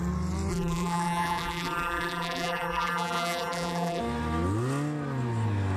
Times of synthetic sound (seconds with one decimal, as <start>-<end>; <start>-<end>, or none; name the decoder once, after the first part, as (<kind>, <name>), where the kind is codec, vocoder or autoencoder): 0.5-4.0 (vocoder, BigVGAN v2)